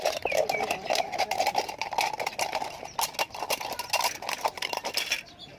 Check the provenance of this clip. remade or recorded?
recorded